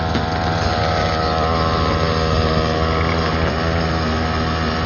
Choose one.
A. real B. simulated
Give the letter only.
A